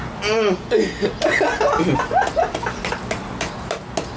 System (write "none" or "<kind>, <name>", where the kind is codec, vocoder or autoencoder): none